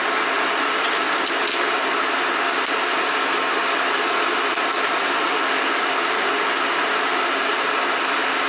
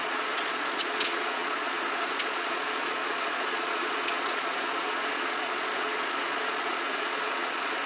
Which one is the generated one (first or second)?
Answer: second